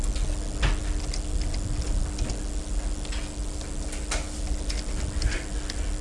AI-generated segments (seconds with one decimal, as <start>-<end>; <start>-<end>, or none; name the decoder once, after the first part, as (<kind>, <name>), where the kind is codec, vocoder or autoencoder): none